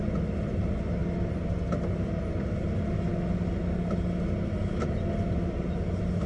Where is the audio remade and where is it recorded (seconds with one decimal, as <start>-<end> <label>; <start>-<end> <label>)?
0.0-1.0 recorded; 1.0-1.7 remade; 1.7-6.3 recorded